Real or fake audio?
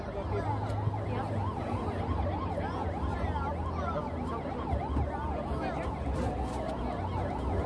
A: real